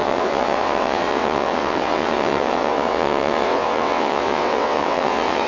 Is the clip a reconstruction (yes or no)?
yes